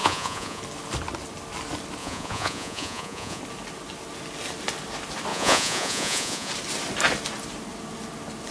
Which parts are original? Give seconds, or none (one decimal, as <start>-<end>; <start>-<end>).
0.6-2.0; 3.4-5.3; 6.5-8.5

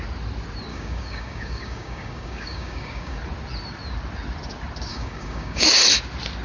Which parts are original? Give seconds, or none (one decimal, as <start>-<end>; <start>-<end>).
0.0-0.7; 3.2-4.9; 5.6-6.4

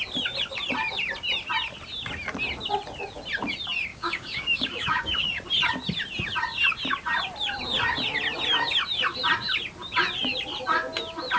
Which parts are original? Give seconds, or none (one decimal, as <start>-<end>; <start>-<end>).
0.0-3.9; 5.3-11.4

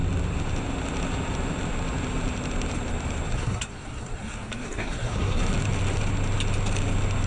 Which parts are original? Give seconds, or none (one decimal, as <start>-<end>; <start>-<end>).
0.0-3.3; 5.4-7.3

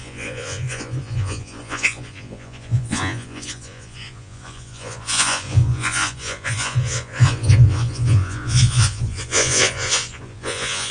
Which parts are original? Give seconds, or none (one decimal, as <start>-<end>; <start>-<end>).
none